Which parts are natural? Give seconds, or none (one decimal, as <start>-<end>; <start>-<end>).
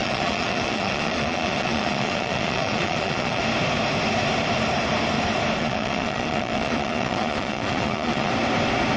3.4-5.6; 8.3-9.0